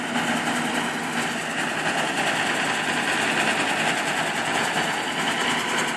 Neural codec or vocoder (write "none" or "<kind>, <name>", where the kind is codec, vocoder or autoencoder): none